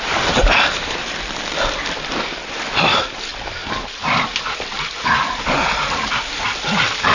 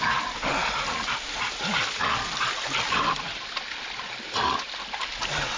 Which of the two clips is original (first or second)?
second